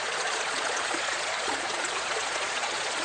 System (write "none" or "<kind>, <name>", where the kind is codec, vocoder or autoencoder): vocoder, Vocos